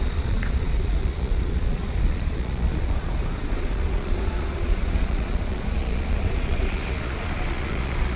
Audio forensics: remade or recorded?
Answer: remade